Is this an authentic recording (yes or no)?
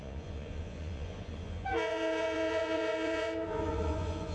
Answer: no